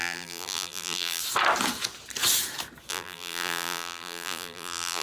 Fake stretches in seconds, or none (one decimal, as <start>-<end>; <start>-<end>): 0.0-1.2; 2.9-5.0